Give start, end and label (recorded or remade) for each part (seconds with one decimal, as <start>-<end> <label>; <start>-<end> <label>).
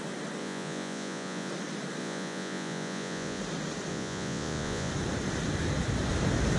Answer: 0.0-0.4 recorded; 0.4-1.5 remade; 1.5-2.0 recorded; 2.0-3.4 remade; 3.4-3.9 recorded; 3.9-4.9 remade; 4.9-6.6 recorded